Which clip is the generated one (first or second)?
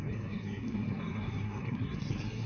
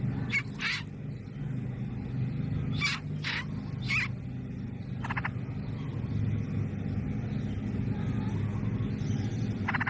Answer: first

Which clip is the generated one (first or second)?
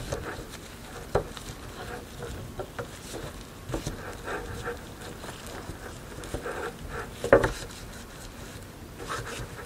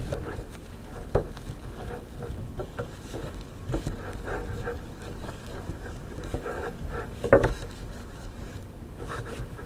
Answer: second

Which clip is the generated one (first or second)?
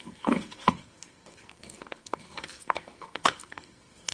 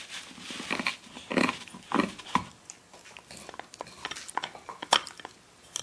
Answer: first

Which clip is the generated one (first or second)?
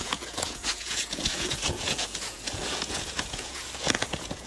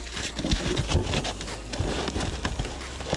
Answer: first